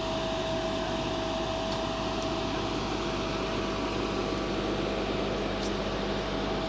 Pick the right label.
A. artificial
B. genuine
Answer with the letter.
B